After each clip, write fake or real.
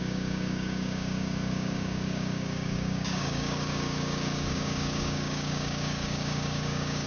fake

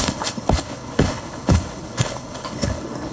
fake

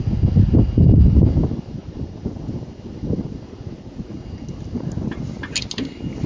real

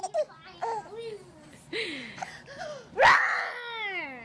real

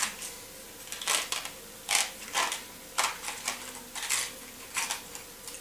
real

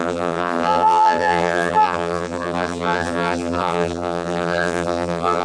fake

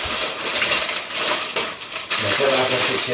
real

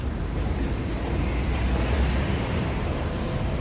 fake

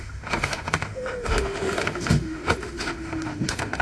fake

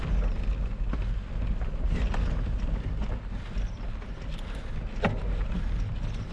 real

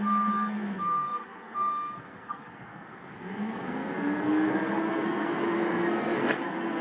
fake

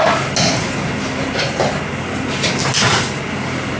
real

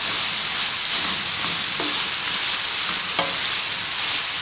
real